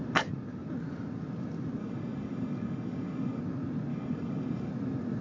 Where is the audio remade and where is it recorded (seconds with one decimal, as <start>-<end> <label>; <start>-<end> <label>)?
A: 0.0-1.8 recorded; 1.8-3.4 remade; 3.4-3.9 recorded; 3.9-4.7 remade; 4.7-5.2 recorded